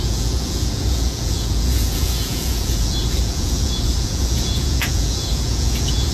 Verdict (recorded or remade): remade